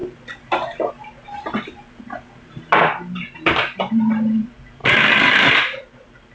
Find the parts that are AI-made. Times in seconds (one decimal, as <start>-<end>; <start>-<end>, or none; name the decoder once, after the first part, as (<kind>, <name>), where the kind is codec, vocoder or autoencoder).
4.8-5.5 (codec, DAC)